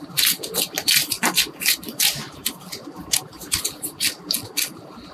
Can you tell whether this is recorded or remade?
recorded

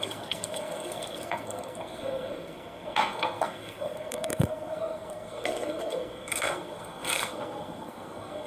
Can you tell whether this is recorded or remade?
remade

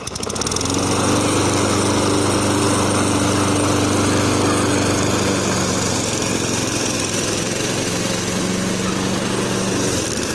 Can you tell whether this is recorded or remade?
recorded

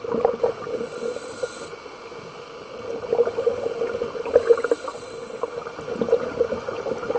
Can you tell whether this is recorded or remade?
recorded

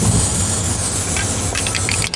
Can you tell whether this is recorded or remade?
recorded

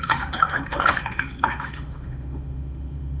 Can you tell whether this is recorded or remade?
remade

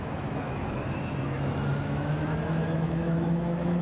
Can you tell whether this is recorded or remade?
remade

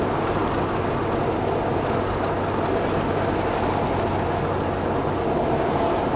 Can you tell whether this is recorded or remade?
recorded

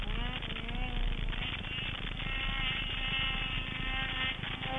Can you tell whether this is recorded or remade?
recorded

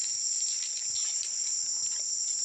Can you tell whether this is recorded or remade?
remade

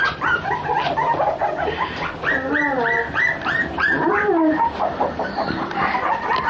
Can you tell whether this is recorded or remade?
remade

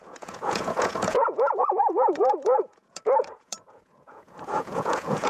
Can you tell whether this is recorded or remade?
remade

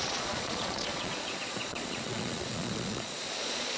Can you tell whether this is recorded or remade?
remade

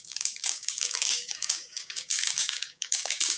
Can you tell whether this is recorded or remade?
remade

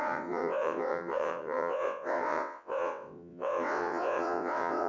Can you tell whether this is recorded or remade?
remade